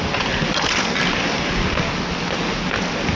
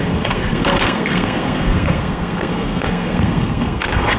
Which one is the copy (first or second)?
second